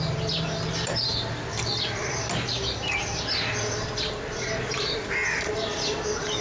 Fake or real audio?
real